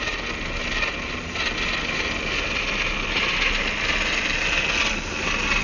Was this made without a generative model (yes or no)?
yes